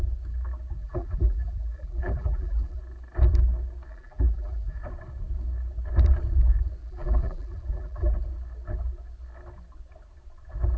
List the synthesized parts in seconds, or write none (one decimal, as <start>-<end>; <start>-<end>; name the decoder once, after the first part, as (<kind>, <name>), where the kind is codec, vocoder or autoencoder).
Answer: 0.8-2.8 (vocoder, BigVGAN v2); 3.9-4.8; 6.8-8.1